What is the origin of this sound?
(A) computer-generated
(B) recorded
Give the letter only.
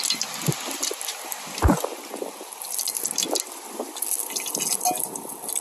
B